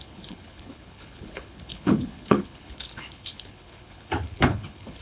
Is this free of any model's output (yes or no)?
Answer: no